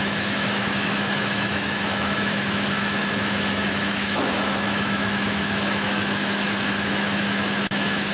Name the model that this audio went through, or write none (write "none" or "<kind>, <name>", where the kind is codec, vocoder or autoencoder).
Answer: autoencoder, DAC-VAE